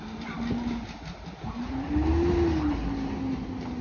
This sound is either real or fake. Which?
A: real